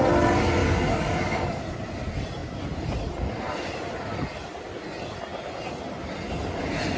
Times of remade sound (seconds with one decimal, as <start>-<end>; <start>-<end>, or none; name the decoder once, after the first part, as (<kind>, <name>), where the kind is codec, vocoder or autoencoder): 0.6-1.6 (codec, DAC)